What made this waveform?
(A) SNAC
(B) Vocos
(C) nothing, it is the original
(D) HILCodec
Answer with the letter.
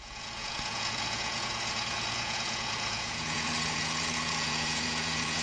B